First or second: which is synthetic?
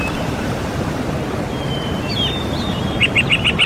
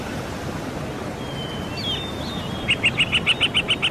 first